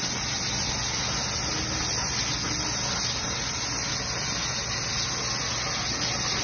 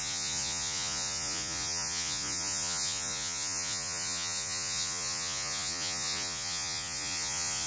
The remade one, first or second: second